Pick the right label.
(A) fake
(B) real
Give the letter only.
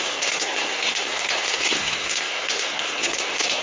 A